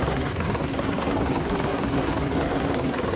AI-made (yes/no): yes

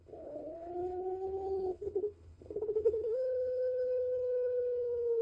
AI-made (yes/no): yes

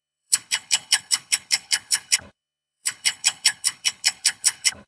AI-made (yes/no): yes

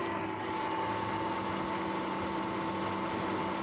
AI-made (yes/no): no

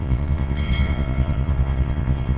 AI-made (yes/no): yes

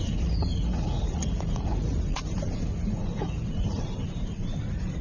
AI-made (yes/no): yes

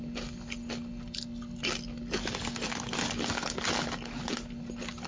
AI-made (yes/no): no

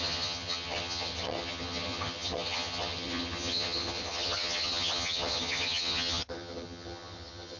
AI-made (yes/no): yes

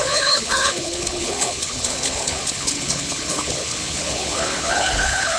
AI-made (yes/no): yes